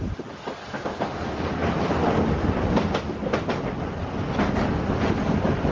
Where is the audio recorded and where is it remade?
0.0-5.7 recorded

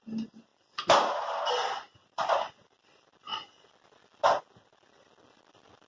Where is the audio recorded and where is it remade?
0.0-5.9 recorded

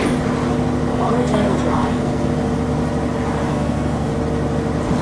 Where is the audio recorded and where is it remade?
0.0-0.9 recorded; 0.9-2.3 remade; 2.3-3.5 recorded; 3.5-4.1 remade; 4.1-5.0 recorded

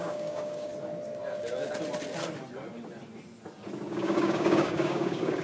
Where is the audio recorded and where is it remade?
0.0-0.7 remade; 0.7-3.9 recorded; 3.9-5.4 remade

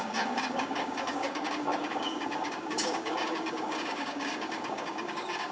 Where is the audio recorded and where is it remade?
0.0-5.5 remade

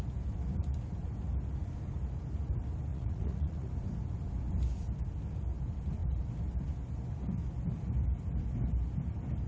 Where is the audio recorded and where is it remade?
0.0-2.9 recorded; 2.9-3.7 remade; 3.7-9.5 recorded

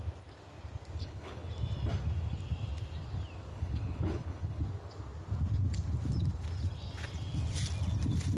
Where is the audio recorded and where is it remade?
0.0-1.0 recorded; 1.0-1.5 remade; 1.5-3.5 recorded; 3.5-4.6 remade; 4.6-8.4 recorded

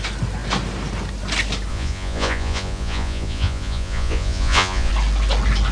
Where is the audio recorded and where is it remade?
0.0-1.7 recorded; 1.7-4.9 remade; 4.9-5.7 recorded